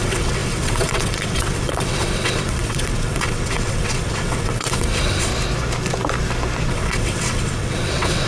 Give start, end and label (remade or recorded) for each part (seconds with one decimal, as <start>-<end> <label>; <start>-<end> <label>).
0.0-5.3 remade; 5.3-6.7 recorded; 6.7-8.3 remade